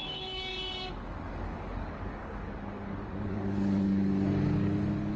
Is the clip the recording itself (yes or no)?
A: no